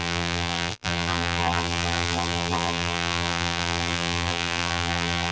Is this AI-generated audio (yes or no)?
yes